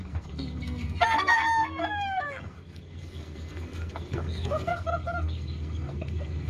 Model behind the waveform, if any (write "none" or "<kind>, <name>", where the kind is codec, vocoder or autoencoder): codec, SNAC